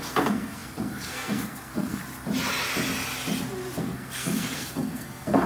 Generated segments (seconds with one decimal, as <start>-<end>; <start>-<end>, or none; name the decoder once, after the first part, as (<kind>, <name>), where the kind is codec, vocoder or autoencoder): 0.0-2.0 (codec, SNAC); 3.8-5.5